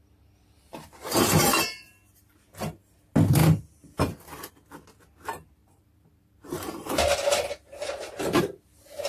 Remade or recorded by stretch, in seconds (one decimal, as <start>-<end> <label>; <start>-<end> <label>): 0.0-0.4 recorded; 0.4-1.5 remade; 1.5-5.6 recorded; 5.6-8.4 remade; 8.4-9.1 recorded